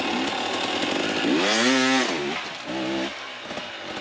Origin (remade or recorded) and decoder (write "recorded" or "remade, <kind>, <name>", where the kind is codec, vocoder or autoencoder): recorded